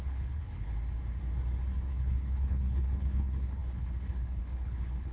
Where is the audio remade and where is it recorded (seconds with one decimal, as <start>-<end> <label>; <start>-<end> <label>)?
0.0-0.7 remade; 0.7-1.9 recorded; 1.9-5.1 remade